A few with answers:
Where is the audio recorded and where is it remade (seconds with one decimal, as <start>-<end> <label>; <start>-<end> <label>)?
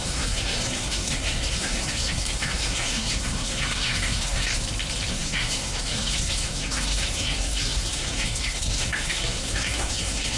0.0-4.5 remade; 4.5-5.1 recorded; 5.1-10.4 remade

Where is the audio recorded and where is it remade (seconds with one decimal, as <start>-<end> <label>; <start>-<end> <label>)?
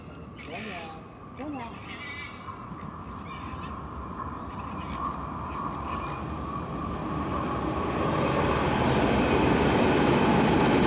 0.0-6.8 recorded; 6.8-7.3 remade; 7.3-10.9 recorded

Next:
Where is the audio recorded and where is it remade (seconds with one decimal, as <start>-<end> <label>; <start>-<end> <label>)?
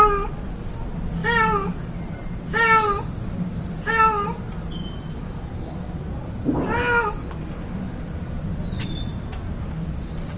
0.0-10.4 recorded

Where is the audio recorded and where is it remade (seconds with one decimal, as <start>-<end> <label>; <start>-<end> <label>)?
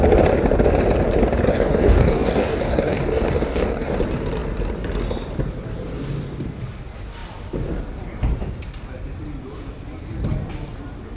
0.0-1.5 recorded; 1.5-4.0 remade; 4.0-11.2 recorded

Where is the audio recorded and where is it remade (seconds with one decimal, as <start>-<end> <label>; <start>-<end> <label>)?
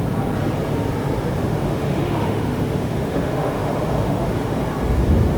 0.0-1.4 recorded; 1.4-4.6 remade; 4.6-5.4 recorded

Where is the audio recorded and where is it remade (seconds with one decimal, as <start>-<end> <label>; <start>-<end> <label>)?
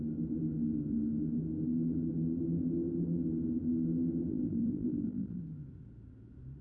0.0-4.3 recorded; 4.3-5.4 remade; 5.4-6.6 recorded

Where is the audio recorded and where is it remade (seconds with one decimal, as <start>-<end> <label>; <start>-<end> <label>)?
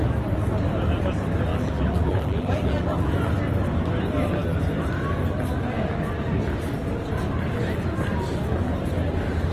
0.0-1.5 recorded; 1.5-3.1 remade; 3.1-9.5 recorded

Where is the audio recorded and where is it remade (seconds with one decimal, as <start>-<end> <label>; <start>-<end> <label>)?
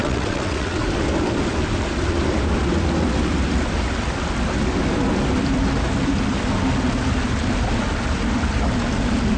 0.0-0.8 remade; 0.8-9.4 recorded